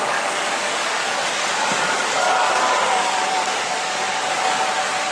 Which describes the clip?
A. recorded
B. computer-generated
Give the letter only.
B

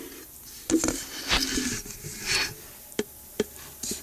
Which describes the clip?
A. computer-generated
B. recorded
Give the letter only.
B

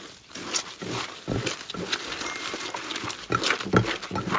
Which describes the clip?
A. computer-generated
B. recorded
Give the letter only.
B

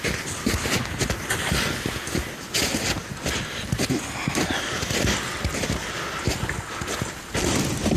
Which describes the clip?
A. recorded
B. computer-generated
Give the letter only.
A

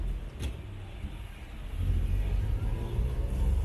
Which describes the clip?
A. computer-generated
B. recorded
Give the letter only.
B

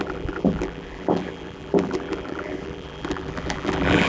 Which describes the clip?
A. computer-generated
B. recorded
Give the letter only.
A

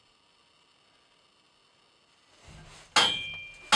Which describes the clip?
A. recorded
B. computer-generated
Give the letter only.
A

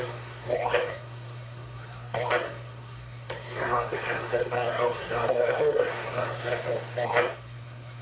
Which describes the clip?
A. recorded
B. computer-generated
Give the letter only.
B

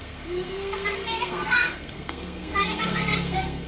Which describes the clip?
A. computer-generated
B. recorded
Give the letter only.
A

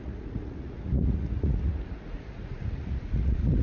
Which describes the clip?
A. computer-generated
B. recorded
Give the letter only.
A